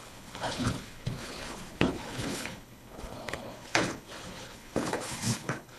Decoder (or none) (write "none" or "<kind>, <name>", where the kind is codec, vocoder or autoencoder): codec, HILCodec